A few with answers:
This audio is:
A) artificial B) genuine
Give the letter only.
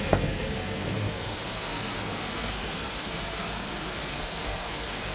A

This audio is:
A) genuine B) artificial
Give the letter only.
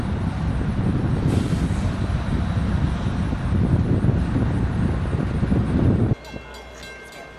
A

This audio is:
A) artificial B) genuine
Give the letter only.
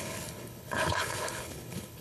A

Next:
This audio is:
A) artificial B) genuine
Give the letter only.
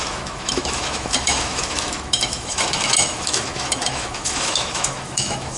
A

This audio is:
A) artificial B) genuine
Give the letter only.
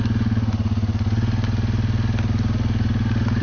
B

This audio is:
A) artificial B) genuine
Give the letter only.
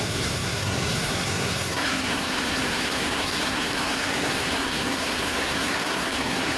A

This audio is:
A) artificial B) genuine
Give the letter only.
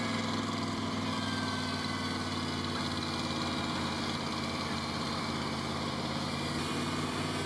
B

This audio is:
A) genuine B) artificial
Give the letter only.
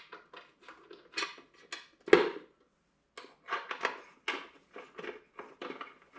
A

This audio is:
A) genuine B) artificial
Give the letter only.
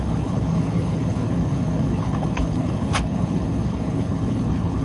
B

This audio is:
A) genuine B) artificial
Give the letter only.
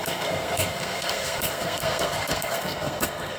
B